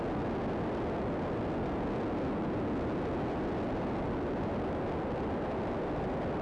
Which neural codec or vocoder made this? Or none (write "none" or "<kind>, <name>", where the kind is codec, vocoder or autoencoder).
none